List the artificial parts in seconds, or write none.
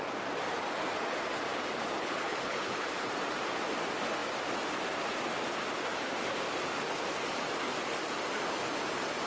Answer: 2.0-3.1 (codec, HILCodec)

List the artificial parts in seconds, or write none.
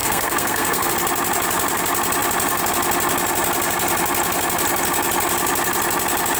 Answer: 0.0-0.9 (codec, SNAC)